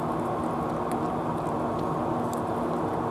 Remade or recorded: recorded